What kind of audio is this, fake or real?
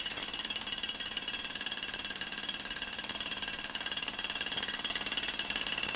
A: fake